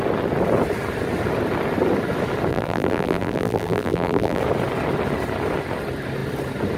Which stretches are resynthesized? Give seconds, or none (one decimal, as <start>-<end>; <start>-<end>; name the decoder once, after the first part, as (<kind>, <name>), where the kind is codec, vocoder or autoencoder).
2.5-4.4 (vocoder, BigVGAN v2)